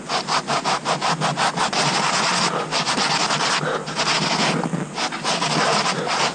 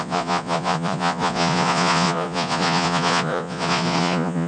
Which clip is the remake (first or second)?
second